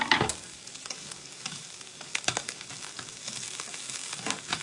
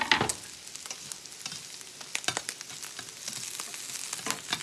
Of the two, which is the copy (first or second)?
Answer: first